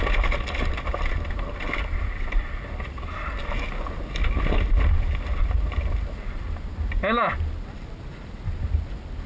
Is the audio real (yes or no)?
yes